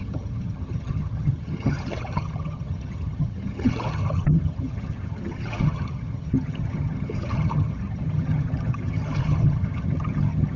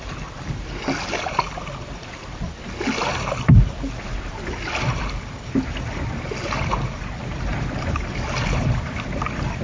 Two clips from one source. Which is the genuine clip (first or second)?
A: second